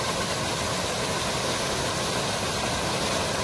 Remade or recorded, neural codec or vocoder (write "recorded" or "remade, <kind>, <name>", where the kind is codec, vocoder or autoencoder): recorded